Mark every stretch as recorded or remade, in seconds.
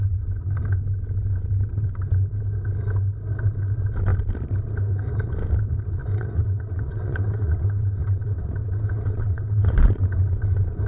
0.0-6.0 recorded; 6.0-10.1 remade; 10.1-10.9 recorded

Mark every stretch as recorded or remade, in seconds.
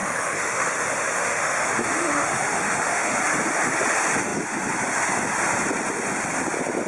0.0-3.2 remade; 3.2-6.9 recorded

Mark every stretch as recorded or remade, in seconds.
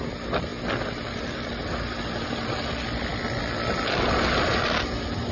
0.0-5.3 recorded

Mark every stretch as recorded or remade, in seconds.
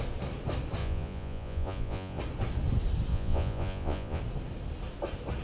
0.0-0.8 recorded; 0.8-2.2 remade; 2.2-3.1 recorded; 3.1-4.2 remade; 4.2-5.4 recorded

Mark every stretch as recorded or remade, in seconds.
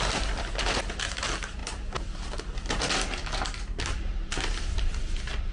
0.0-5.5 recorded